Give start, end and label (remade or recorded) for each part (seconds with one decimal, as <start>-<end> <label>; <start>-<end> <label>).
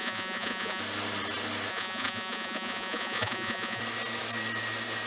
0.0-0.8 remade; 0.8-1.7 recorded; 1.7-3.8 remade; 3.8-5.1 recorded